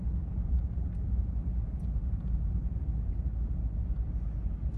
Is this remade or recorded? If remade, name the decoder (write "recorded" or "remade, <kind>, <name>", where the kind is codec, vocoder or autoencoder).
recorded